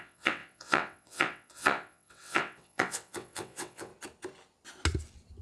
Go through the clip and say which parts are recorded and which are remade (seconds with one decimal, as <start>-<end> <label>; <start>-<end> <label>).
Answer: 0.0-3.9 remade; 3.9-5.4 recorded